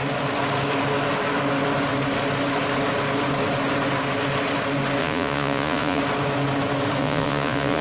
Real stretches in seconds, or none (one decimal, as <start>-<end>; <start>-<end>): 0.0-5.0; 6.0-7.0